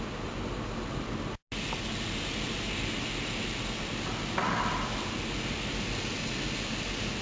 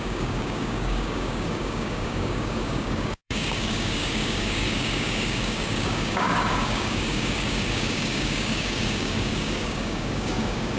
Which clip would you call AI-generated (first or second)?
second